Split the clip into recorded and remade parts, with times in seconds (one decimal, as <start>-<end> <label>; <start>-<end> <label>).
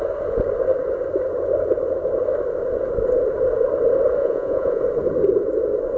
0.0-4.2 recorded; 4.2-4.8 remade; 4.8-6.0 recorded